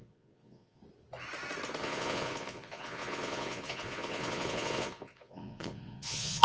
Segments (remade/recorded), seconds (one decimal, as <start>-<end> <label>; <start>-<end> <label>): 0.0-0.8 remade; 0.8-1.8 recorded; 1.8-6.4 remade